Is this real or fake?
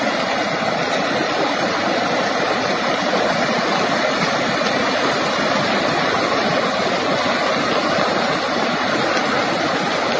real